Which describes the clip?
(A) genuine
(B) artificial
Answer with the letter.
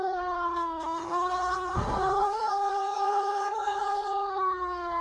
B